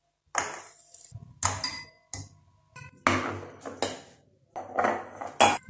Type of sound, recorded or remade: recorded